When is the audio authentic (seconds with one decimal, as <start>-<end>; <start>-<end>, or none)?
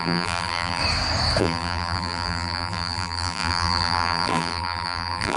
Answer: 0.8-1.4